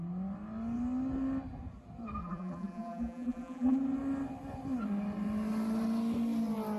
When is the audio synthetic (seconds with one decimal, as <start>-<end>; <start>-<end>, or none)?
2.2-3.8

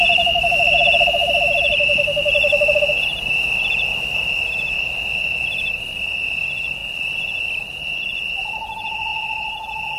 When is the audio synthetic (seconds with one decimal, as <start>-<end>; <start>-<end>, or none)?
none

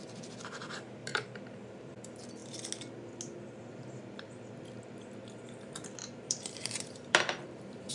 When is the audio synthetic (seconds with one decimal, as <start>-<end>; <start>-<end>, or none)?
1.0-1.9; 6.0-7.9

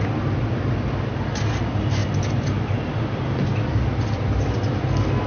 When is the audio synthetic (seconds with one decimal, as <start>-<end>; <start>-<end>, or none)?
none